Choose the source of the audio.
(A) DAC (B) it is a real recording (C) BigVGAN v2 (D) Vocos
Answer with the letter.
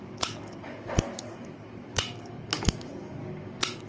A